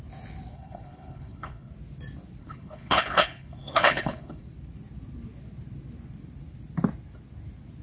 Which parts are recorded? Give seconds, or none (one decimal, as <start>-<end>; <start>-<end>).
0.0-0.5; 1.7-2.4; 4.4-7.8